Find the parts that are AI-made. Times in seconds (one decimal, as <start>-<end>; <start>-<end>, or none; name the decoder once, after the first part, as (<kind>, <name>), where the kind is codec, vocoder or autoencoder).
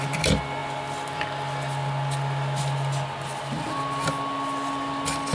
none